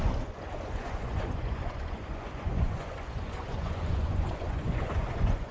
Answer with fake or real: fake